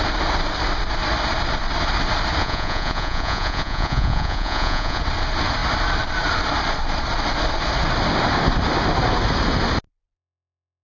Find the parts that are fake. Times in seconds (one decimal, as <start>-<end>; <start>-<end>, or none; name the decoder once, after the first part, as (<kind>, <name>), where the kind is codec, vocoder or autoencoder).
2.4-5.0 (vocoder, Vocos)